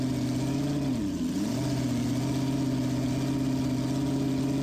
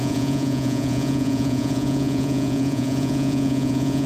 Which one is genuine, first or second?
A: first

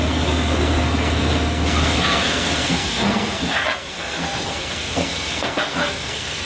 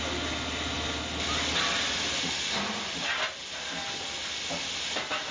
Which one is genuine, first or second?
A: second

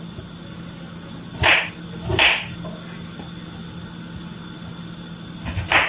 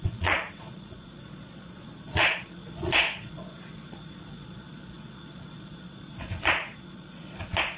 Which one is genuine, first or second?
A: first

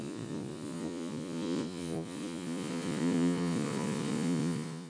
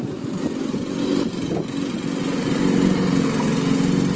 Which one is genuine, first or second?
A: second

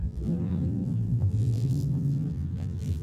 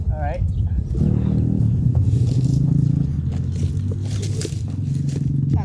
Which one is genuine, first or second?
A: second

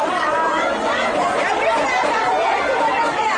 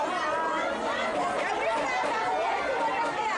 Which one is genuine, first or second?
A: second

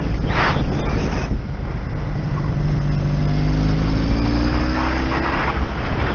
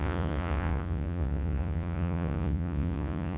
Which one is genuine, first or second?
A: first